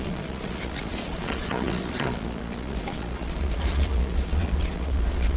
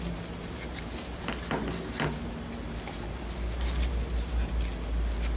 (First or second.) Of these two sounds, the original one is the second